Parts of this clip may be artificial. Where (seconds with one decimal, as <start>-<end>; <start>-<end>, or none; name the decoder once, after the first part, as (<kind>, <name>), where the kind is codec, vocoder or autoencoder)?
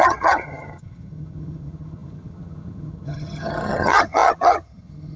0.0-5.2 (vocoder, HiFi-GAN)